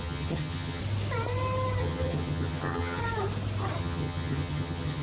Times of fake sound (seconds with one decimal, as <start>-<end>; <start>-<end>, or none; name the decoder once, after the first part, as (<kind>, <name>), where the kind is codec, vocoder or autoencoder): 0.0-0.8 (vocoder, HiFi-GAN); 1.8-3.0; 3.8-5.0